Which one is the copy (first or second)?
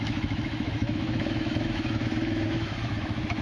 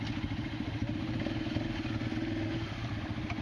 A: first